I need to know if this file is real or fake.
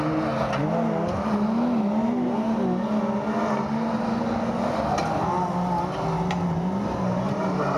real